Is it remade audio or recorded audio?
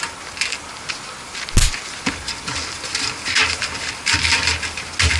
recorded